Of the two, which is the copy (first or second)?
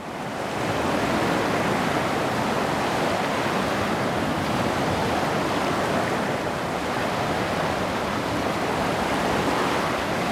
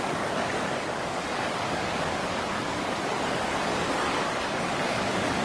second